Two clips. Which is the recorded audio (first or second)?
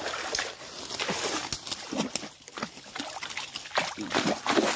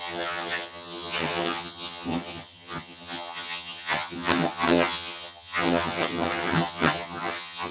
first